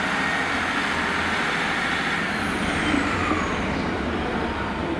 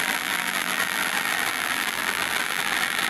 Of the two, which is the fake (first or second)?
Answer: second